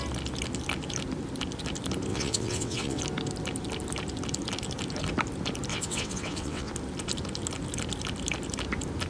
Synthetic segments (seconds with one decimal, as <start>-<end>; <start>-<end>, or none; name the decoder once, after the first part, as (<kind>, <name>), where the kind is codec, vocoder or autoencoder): 2.1-3.0 (vocoder, WaveNeXt); 5.7-6.7